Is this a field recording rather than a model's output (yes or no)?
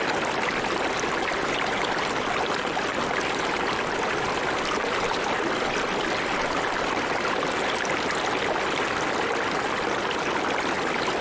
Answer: yes